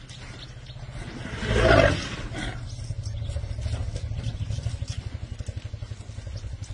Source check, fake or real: real